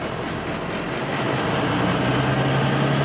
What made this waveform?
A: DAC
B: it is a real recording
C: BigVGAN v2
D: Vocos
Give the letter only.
B